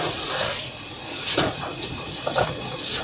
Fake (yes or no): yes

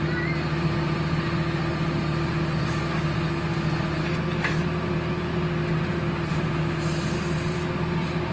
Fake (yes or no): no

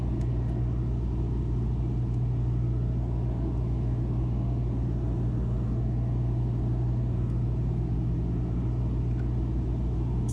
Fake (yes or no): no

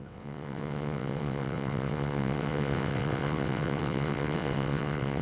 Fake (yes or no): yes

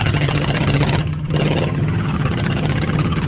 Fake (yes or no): yes